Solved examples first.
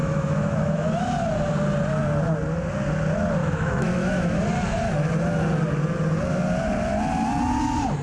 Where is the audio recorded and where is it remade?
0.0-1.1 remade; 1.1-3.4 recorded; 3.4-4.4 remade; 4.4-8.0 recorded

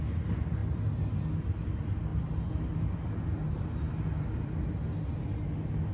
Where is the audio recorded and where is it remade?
0.0-5.9 recorded

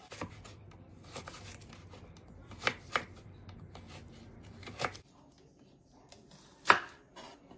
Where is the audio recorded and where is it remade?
0.0-7.6 recorded

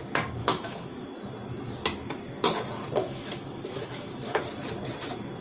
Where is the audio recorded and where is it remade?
0.0-0.4 recorded; 0.4-1.1 remade; 1.1-3.0 recorded; 3.0-4.4 remade; 4.4-5.4 recorded

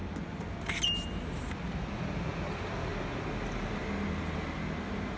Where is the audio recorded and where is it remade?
0.0-5.2 recorded

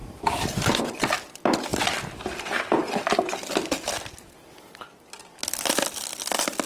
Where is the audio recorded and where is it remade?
0.0-6.7 recorded

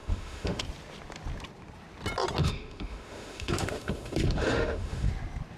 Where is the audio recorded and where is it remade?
0.0-0.6 remade; 0.6-2.4 recorded; 2.4-5.1 remade; 5.1-5.6 recorded